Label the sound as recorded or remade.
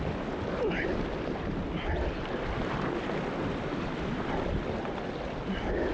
recorded